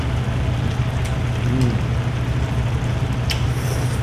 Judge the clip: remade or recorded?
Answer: recorded